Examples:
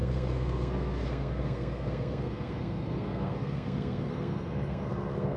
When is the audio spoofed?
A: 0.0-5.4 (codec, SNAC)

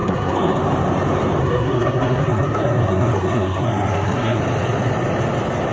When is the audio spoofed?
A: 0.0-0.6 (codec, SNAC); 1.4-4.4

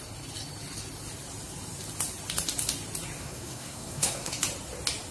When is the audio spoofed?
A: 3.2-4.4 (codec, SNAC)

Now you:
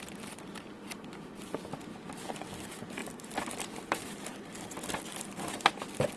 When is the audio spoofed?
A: none

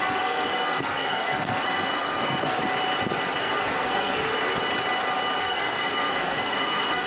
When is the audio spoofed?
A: 0.0-2.6 (codec, SNAC); 3.4-4.3; 5.4-7.1

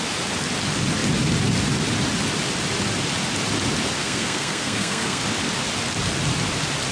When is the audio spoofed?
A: 4.0-5.2 (codec, SNAC)

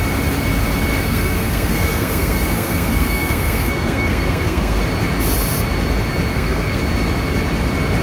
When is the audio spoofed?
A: 0.9-4.8 (codec, SNAC); 6.3-6.8

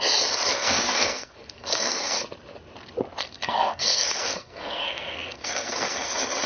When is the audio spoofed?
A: 0.5-2.2 (codec, SNAC); 3.2-6.1